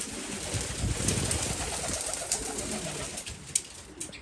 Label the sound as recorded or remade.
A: recorded